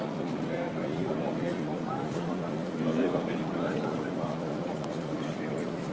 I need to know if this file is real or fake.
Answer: fake